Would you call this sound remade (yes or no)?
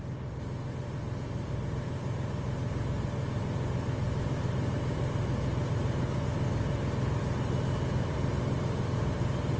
no